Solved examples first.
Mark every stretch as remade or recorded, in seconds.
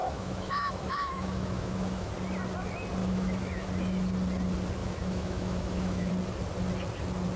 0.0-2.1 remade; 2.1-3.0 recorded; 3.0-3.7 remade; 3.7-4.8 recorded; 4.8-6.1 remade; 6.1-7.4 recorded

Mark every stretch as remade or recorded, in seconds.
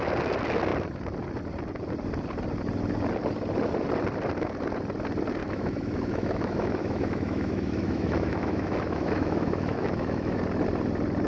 0.0-5.4 recorded; 5.4-10.4 remade; 10.4-11.3 recorded